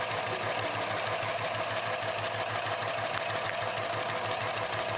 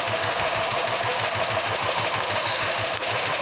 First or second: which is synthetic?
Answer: second